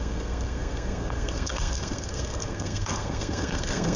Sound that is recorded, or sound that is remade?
remade